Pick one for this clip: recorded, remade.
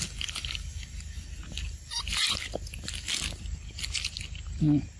recorded